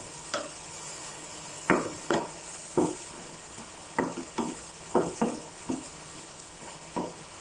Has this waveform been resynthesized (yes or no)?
yes